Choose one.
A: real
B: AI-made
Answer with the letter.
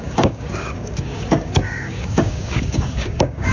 B